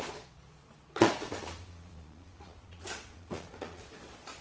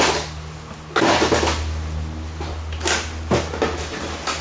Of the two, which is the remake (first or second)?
first